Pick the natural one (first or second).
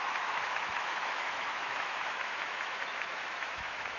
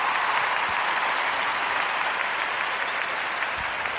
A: second